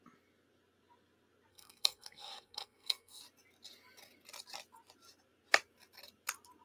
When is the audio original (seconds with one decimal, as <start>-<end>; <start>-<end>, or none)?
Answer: 0.0-1.5; 3.2-6.6